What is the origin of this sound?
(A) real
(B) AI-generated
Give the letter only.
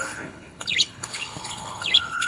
B